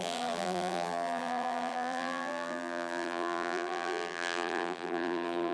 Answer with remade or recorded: remade